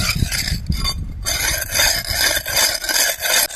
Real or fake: real